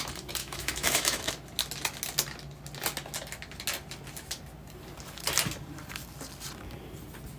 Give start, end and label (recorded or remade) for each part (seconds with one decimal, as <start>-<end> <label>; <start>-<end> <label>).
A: 0.0-0.4 recorded; 0.4-1.3 remade; 1.3-7.4 recorded